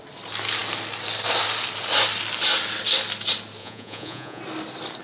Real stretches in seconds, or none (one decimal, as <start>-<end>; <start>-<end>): 0.0-3.6; 4.4-5.0